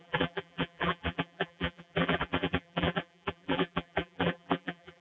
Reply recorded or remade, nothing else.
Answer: remade